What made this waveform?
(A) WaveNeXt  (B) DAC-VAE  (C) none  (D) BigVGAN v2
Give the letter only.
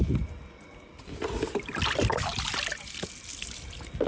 C